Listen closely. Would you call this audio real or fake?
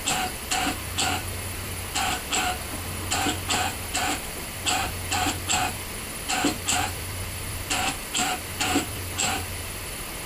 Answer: fake